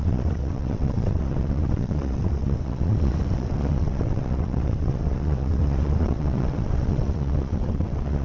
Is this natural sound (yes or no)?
no